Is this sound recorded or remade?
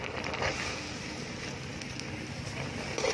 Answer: remade